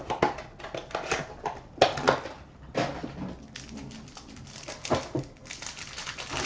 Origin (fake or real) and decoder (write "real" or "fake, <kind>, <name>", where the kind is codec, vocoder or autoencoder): real